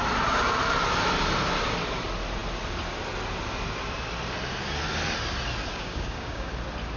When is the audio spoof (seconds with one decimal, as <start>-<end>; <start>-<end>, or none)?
5.7-6.5